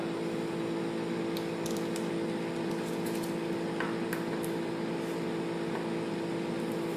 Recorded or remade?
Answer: recorded